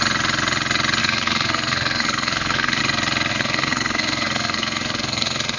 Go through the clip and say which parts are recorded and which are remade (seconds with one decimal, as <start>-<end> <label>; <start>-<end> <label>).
0.0-1.0 recorded; 1.0-2.8 remade; 2.8-3.3 recorded; 3.3-5.6 remade

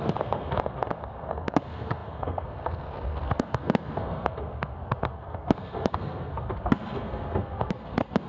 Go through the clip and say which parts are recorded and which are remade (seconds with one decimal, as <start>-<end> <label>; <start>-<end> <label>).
0.0-8.3 remade

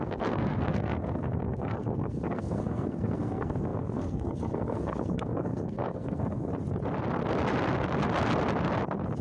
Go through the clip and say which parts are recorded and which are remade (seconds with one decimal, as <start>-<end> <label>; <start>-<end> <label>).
0.0-6.5 remade; 6.5-9.2 recorded

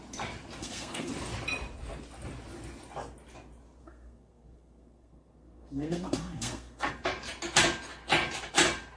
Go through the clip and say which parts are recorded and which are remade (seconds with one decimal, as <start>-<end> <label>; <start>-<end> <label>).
0.0-0.6 recorded; 0.6-1.1 remade; 1.1-3.8 recorded; 3.8-6.9 remade; 6.9-9.0 recorded

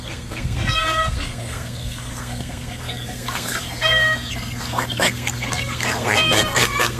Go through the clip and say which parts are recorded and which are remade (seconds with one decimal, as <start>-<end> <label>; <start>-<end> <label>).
0.0-7.0 remade

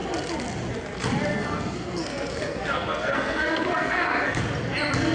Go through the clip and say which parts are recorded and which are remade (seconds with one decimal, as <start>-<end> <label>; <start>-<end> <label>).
0.0-1.3 recorded; 1.3-4.4 remade; 4.4-5.1 recorded

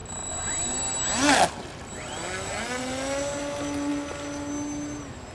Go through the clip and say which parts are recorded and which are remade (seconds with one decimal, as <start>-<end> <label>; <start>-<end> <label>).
0.0-5.3 recorded

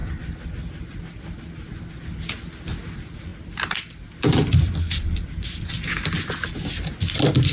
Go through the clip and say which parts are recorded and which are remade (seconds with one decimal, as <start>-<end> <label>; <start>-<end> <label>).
0.0-7.5 recorded